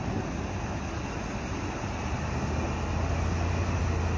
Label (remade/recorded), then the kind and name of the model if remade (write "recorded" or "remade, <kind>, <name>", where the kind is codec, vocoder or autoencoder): recorded